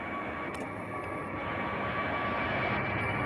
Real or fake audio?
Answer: real